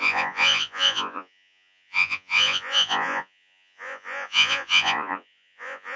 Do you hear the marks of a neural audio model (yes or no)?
yes